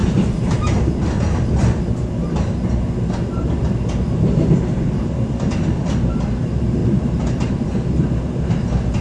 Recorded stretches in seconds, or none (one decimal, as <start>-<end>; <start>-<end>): 0.0-6.8; 7.5-9.0